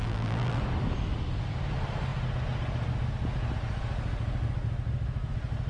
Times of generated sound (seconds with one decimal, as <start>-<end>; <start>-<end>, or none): 0.0-0.6